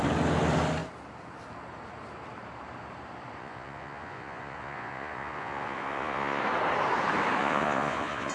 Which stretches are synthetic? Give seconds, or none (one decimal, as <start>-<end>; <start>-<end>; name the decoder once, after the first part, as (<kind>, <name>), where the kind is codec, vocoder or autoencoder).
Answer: 3.4-6.4 (vocoder, Vocos); 7.4-8.3

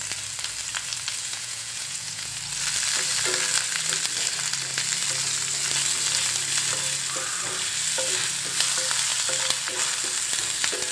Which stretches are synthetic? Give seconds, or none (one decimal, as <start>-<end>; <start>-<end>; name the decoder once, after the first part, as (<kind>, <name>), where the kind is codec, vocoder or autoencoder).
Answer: 1.2-2.4 (vocoder, Vocos)

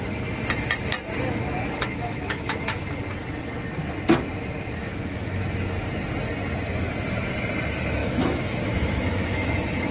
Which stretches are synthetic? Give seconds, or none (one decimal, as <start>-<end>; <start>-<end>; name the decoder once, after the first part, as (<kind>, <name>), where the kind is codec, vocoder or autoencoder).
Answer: 1.9-2.8 (autoencoder, DAC-VAE); 4.8-5.4; 8.0-9.9

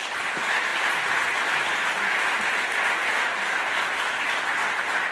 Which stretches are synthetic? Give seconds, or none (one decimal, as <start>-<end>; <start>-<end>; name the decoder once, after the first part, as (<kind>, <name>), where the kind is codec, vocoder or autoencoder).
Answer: none

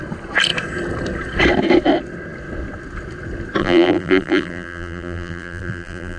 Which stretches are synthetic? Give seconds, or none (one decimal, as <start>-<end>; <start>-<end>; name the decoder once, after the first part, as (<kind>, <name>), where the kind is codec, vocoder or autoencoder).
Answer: 3.6-6.2 (vocoder, BigVGAN v2)

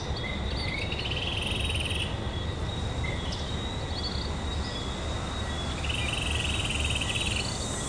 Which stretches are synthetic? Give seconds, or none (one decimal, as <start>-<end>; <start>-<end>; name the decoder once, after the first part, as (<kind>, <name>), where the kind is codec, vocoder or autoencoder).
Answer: none

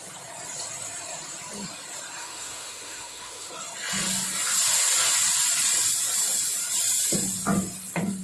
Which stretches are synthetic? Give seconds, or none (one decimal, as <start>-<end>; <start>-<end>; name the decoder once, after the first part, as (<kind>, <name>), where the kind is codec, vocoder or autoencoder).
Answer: 2.2-3.5 (autoencoder, DAC-VAE)